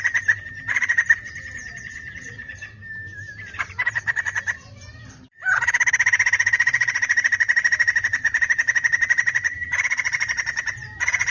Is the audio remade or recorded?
remade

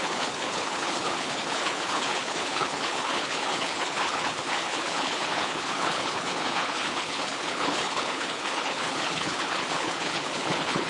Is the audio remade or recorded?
remade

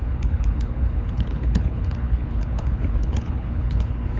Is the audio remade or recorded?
remade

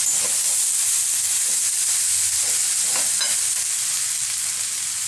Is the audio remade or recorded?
recorded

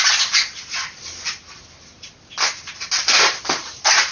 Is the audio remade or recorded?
recorded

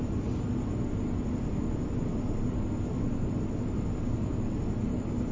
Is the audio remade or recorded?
recorded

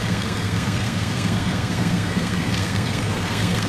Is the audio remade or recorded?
remade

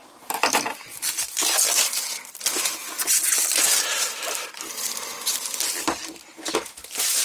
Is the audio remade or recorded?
recorded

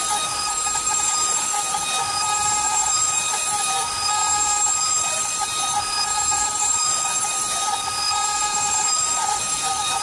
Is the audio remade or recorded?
remade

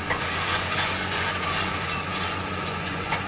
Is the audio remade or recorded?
remade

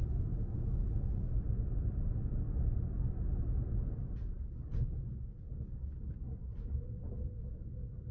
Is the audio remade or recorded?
recorded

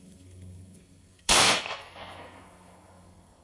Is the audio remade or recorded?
remade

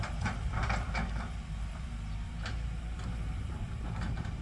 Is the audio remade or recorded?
remade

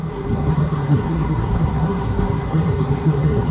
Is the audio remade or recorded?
remade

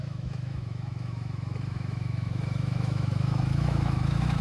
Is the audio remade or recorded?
remade